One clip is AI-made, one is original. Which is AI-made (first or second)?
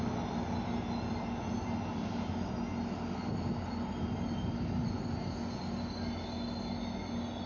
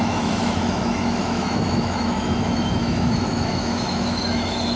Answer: second